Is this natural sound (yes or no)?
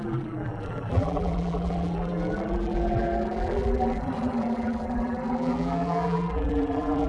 no